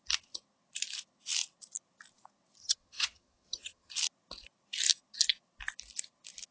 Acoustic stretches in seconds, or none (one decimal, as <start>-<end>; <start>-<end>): 0.0-2.6; 3.9-6.5

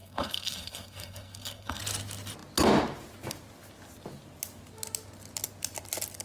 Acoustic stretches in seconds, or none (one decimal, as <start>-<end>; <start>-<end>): 1.8-6.2